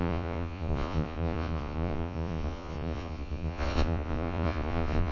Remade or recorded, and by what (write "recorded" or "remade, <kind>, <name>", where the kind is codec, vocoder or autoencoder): remade, vocoder, Vocos